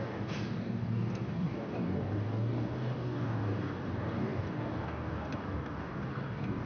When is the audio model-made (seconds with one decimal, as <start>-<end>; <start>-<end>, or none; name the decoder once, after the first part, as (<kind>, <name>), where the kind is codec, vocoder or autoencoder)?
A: 0.0-6.7 (codec, DAC)